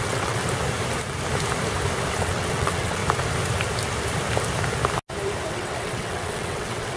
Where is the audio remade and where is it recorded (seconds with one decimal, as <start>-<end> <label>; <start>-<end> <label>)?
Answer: 0.0-0.4 remade; 0.4-2.2 recorded; 2.2-3.0 remade; 3.0-5.5 recorded; 5.5-7.0 remade